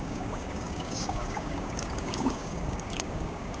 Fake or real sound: fake